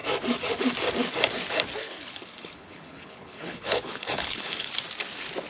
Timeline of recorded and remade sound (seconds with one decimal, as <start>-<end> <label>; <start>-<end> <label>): 0.0-1.8 recorded; 1.8-4.7 remade; 4.7-5.5 recorded